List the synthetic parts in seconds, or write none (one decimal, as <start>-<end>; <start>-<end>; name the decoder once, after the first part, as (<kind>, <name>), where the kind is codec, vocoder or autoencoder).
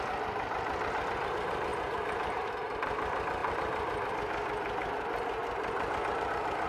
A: 1.7-2.8 (vocoder, BigVGAN v2); 3.4-4.1